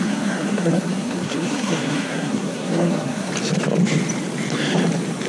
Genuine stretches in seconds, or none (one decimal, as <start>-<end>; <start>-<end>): 3.3-5.3